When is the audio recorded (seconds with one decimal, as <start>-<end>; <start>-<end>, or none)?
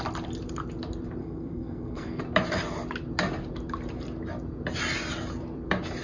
0.0-1.2; 2.2-6.0